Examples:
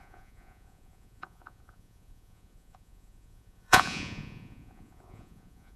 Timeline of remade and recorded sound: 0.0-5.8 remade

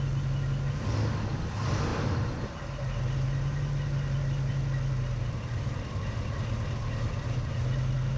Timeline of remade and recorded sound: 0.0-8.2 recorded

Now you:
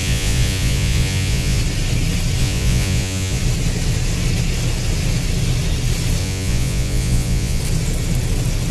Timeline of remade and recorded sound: 0.0-1.6 remade; 1.6-2.4 recorded; 2.4-3.4 remade; 3.4-6.2 recorded; 6.2-7.6 remade; 7.6-8.7 recorded

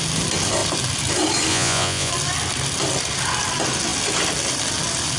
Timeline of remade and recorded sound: 0.0-1.5 recorded; 1.5-2.1 remade; 2.1-5.2 recorded